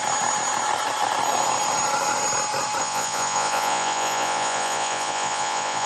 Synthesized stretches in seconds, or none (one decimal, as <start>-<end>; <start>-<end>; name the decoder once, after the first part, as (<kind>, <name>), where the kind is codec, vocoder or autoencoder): 2.8-5.9 (vocoder, Vocos)